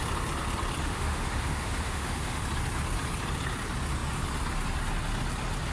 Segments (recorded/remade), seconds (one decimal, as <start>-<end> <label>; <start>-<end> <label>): 0.0-0.8 recorded; 0.8-2.4 remade; 2.4-5.7 recorded

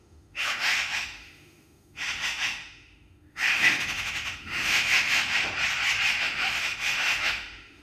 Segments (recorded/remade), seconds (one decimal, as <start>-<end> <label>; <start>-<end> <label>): 0.0-5.5 remade; 5.5-6.1 recorded; 6.1-7.8 remade

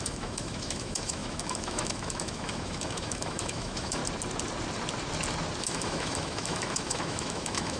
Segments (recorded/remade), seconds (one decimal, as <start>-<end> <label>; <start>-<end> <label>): 0.0-4.0 remade; 4.0-5.6 recorded; 5.6-7.8 remade